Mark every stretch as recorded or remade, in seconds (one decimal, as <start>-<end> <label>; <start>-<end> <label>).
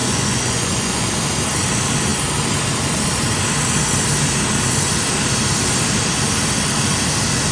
0.0-1.1 remade; 1.1-7.5 recorded